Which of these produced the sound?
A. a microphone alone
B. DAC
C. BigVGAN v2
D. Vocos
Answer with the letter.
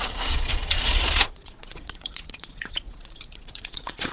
D